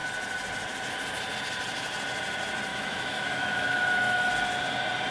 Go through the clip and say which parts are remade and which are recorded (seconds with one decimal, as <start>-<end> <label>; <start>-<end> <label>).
0.0-2.7 recorded; 2.7-4.3 remade; 4.3-5.1 recorded